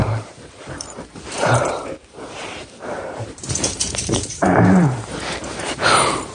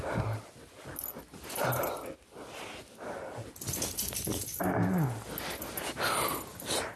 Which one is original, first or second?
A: second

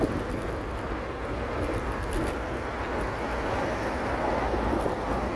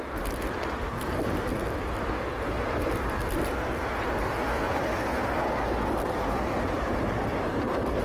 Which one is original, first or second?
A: first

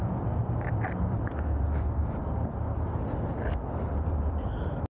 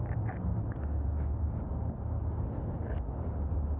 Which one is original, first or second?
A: second